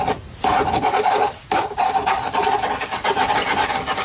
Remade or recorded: recorded